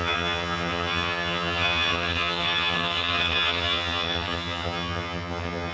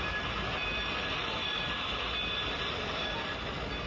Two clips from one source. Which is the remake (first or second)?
first